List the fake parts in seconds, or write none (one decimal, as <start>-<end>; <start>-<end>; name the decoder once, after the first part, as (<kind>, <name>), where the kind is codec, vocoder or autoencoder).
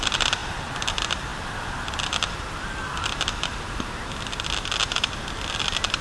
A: 0.4-0.9 (vocoder, BigVGAN v2); 1.3-3.7